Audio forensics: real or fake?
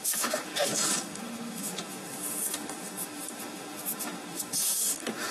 fake